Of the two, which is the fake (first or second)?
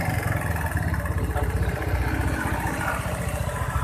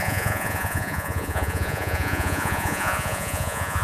second